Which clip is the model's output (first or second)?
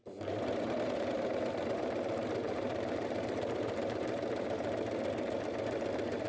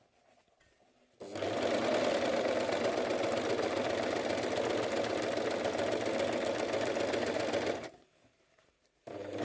first